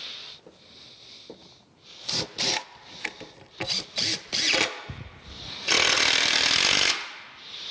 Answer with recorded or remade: recorded